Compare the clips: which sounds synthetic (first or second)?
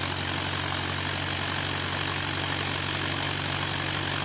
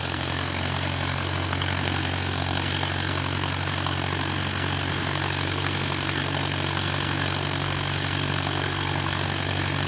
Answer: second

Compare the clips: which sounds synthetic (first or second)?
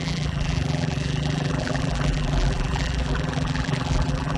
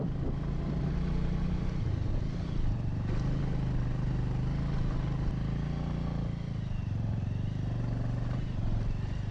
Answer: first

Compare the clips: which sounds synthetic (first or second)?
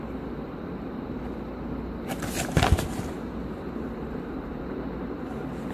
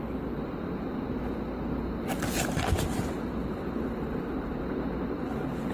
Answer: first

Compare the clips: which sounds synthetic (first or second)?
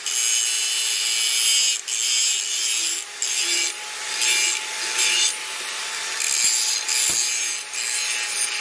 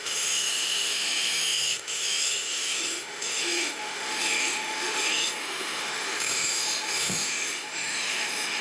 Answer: second